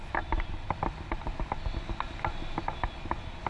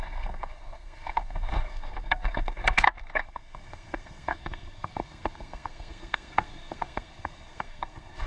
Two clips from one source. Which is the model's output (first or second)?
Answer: second